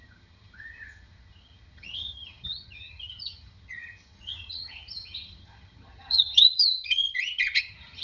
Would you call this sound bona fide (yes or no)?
no